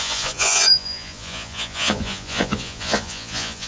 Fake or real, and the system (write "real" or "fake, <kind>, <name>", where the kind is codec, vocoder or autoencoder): fake, vocoder, Vocos